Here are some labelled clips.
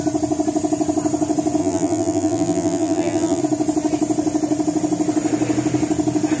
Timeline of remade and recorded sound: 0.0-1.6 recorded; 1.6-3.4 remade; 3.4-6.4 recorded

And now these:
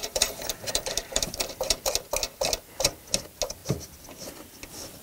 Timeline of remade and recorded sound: 0.0-1.9 remade; 1.9-5.0 recorded

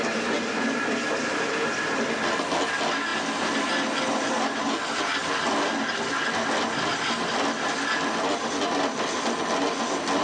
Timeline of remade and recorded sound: 0.0-10.2 recorded

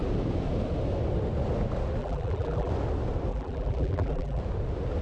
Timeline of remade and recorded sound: 0.0-2.0 recorded; 2.0-2.7 remade; 2.7-3.3 recorded; 3.3-4.4 remade; 4.4-5.0 recorded

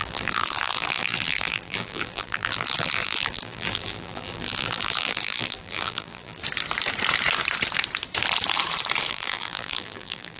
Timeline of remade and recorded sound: 0.0-6.4 remade; 6.4-9.1 recorded; 9.1-10.4 remade

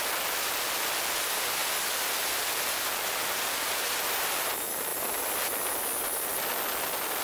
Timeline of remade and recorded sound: 0.0-7.2 recorded

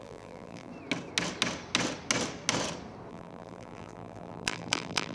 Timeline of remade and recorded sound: 0.0-0.7 remade; 0.7-3.1 recorded; 3.1-5.1 remade

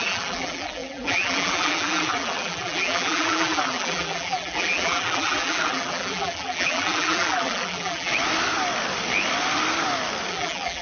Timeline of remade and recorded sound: 0.0-8.1 remade; 8.1-10.3 recorded; 10.3-10.8 remade